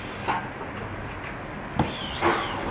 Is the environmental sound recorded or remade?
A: recorded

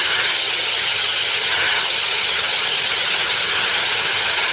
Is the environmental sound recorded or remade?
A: remade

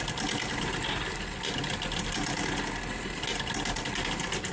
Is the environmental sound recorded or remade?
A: recorded